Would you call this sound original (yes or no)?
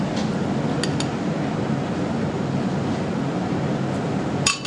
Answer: yes